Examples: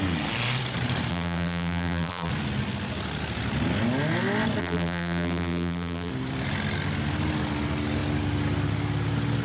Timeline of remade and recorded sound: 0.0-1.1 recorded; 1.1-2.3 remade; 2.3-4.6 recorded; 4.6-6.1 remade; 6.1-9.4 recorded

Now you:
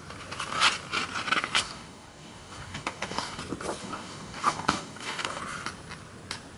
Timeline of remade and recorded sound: 0.0-1.6 recorded; 1.6-3.4 remade; 3.4-3.8 recorded; 3.8-5.4 remade; 5.4-6.6 recorded

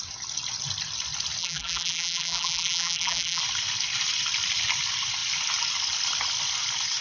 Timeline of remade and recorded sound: 0.0-1.4 recorded; 1.4-3.4 remade; 3.4-7.0 recorded